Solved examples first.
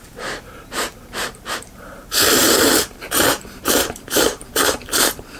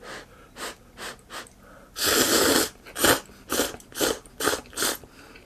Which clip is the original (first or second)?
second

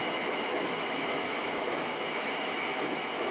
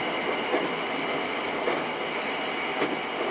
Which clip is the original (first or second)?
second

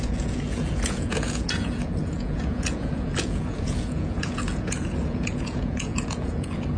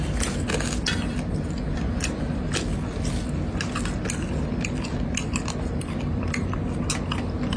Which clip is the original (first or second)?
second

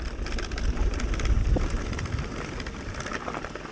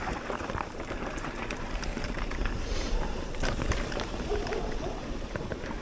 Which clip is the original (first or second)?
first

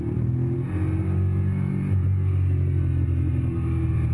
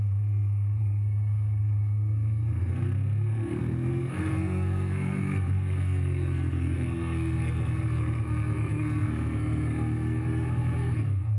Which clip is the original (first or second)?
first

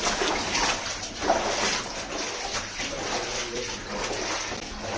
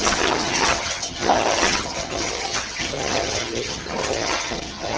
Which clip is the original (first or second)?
first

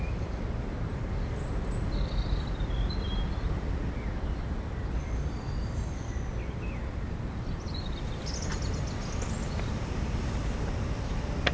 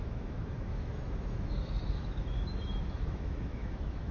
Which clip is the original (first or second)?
first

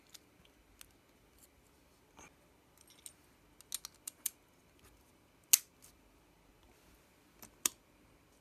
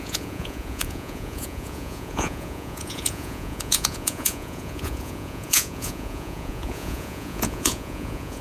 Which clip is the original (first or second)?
first